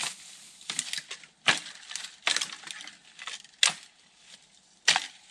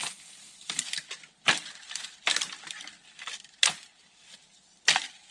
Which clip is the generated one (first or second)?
second